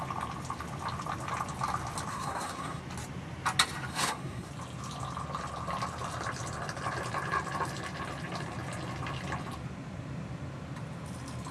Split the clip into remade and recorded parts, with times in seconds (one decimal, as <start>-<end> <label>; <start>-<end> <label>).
0.0-2.1 recorded; 2.1-2.8 remade; 2.8-3.9 recorded; 3.9-4.5 remade; 4.5-11.5 recorded